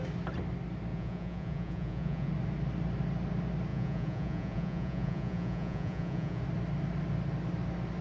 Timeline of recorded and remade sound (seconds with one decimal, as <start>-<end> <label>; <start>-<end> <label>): 0.0-0.9 recorded; 0.9-2.3 remade; 2.3-3.7 recorded; 3.7-6.4 remade; 6.4-8.0 recorded